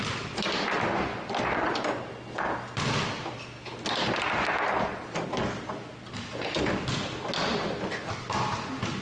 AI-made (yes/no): no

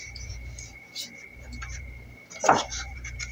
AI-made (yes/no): yes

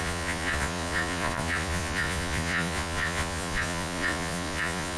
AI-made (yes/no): yes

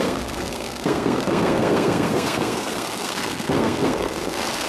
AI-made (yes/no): yes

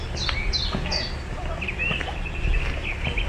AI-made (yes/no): no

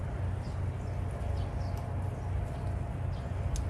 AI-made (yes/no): no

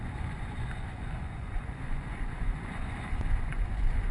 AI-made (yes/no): yes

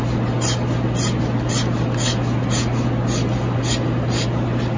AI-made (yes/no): no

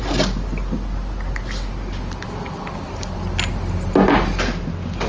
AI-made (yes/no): no